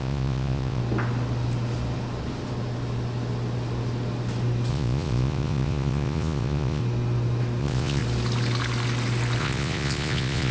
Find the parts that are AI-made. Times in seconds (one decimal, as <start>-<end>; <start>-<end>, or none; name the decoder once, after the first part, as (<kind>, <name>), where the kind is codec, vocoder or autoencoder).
0.0-0.8 (vocoder, Vocos); 4.7-6.8; 7.6-8.0; 9.4-10.5